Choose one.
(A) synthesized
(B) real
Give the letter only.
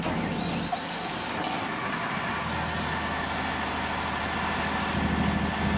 B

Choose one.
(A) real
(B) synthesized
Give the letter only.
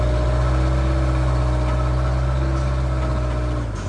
A